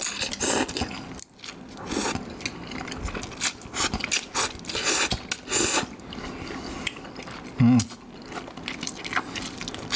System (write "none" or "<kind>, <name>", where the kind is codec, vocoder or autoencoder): none